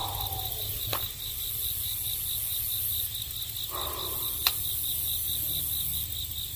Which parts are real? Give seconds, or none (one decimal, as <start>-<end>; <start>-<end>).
0.0-6.6